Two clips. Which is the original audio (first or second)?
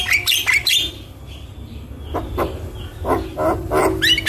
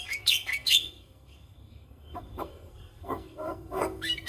first